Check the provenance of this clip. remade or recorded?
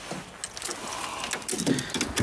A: recorded